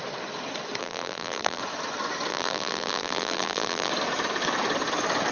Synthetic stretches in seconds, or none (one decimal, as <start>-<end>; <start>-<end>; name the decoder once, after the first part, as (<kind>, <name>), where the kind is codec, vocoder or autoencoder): 0.8-1.6 (vocoder, BigVGAN v2); 2.3-3.9